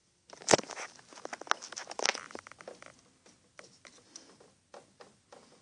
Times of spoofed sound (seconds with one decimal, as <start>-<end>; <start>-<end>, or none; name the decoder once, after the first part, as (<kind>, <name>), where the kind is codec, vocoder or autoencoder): none